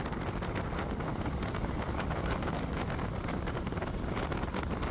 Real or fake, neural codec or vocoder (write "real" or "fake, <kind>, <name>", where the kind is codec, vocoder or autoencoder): real